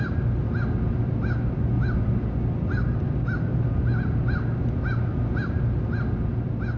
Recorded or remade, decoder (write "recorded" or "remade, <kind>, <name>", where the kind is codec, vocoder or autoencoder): recorded